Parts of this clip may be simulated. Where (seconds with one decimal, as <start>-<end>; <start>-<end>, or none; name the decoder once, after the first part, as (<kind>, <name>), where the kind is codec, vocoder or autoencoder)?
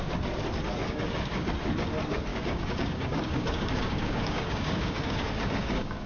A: 0.8-1.5 (codec, DAC); 2.3-6.1